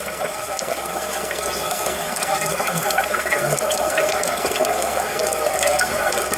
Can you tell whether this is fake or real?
fake